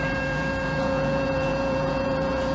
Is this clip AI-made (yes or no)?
yes